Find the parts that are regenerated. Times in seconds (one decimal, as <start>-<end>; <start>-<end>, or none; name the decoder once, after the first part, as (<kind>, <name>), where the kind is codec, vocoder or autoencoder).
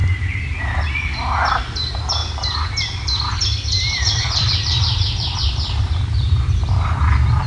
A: 0.0-0.6 (vocoder, BigVGAN v2); 2.2-6.7